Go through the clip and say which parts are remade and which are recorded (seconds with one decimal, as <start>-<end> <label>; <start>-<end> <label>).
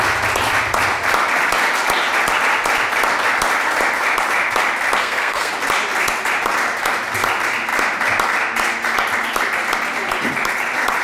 0.0-5.0 recorded; 5.0-5.5 remade; 5.5-11.0 recorded